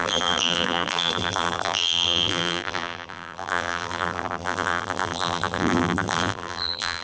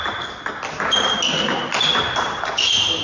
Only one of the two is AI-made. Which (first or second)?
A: first